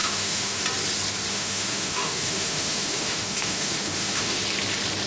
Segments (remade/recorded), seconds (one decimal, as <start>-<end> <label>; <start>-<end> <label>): 0.0-0.6 remade; 0.6-1.3 recorded; 1.3-4.4 remade; 4.4-5.1 recorded